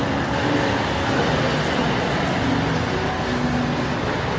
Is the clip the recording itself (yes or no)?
yes